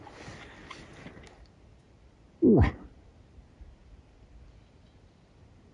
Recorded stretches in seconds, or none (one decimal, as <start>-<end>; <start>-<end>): 0.0-5.7